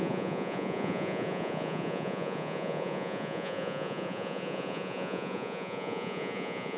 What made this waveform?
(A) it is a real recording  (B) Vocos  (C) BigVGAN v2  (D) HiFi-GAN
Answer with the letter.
B